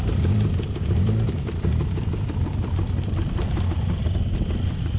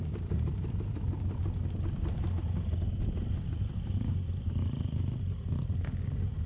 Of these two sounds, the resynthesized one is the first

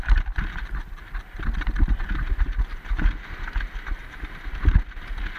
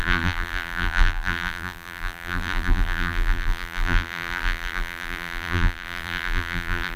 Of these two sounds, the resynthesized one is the second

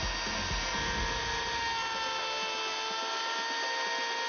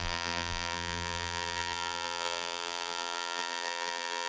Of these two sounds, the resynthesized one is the second